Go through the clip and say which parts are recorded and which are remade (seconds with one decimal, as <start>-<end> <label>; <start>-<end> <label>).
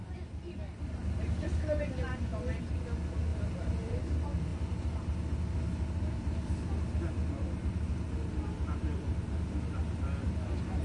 0.0-1.8 remade; 1.8-3.3 recorded; 3.3-4.0 remade; 4.0-10.8 recorded